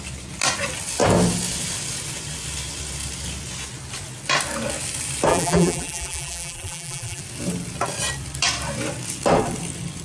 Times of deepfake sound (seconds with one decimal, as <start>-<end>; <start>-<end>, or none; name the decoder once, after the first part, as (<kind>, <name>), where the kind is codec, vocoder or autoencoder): 5.3-7.2 (vocoder, BigVGAN v2)